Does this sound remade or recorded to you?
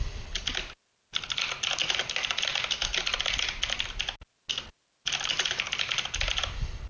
recorded